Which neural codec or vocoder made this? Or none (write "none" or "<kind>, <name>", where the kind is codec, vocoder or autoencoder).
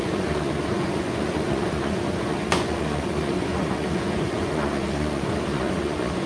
vocoder, Vocos